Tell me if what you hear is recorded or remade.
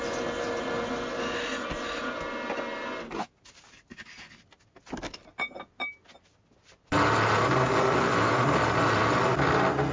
recorded